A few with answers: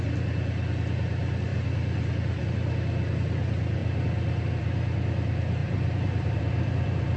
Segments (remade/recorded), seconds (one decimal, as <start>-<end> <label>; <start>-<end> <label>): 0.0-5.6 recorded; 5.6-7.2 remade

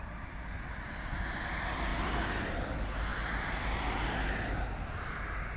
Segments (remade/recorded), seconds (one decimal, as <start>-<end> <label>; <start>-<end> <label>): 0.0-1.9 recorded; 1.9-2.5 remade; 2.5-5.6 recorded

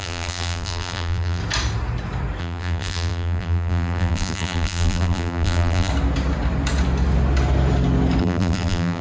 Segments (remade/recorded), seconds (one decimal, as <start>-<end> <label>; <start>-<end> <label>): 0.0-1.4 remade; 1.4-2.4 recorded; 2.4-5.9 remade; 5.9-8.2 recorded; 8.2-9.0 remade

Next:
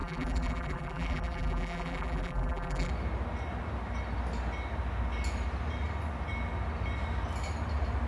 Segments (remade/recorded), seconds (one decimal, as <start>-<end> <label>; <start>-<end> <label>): 0.0-2.9 remade; 2.9-8.1 recorded